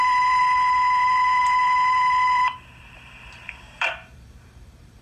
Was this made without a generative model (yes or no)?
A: no